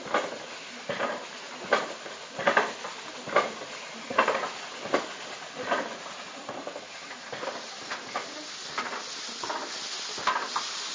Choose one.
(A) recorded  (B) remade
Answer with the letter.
A